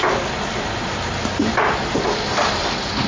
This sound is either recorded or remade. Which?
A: recorded